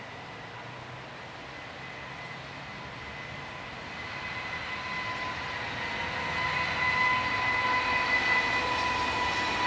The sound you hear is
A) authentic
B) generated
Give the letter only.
A